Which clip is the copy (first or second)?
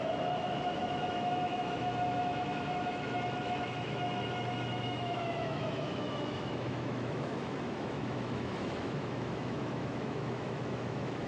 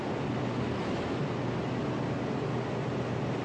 first